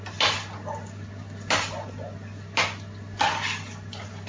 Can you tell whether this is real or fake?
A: real